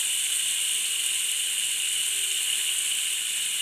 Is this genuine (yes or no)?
yes